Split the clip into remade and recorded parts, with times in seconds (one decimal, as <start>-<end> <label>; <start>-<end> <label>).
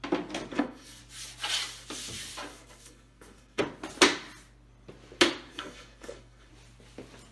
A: 0.0-0.5 recorded; 0.5-1.0 remade; 1.0-2.5 recorded; 2.5-3.6 remade; 3.6-5.5 recorded; 5.5-6.5 remade; 6.5-7.3 recorded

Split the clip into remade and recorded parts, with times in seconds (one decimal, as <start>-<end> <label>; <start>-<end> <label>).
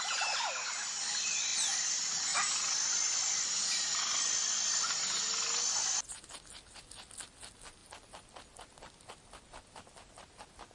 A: 0.0-10.7 recorded